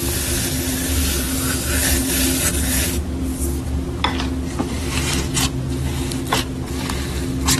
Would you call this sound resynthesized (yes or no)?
no